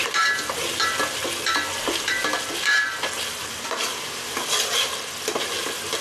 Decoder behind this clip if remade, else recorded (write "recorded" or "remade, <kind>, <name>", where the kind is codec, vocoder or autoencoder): recorded